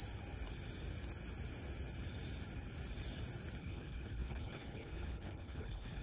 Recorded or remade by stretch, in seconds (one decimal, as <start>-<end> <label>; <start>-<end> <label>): 0.0-3.6 recorded; 3.6-6.0 remade